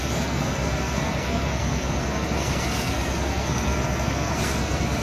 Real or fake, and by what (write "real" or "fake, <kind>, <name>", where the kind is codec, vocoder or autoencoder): fake, codec, SNAC